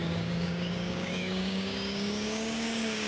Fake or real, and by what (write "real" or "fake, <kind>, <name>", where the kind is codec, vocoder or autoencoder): fake, codec, DAC